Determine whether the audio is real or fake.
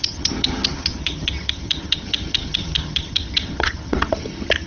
fake